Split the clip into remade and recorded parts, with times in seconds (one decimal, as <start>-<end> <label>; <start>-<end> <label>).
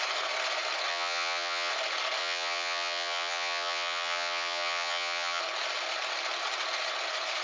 0.0-0.9 recorded; 0.9-1.7 remade; 1.7-2.2 recorded; 2.2-5.4 remade; 5.4-7.4 recorded